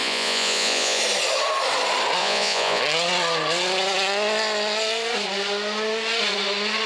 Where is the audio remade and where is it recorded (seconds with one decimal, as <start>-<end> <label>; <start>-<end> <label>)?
0.0-1.0 remade; 1.0-2.2 recorded; 2.2-2.8 remade; 2.8-6.9 recorded